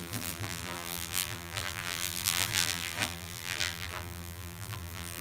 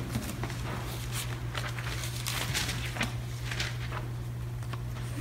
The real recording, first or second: second